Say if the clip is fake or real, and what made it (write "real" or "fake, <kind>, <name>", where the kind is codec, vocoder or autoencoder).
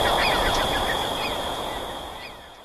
fake, vocoder, Vocos